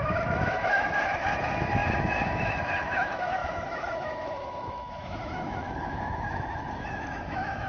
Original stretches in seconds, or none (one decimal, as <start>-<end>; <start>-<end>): none